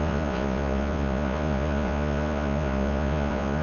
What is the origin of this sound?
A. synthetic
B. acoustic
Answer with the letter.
A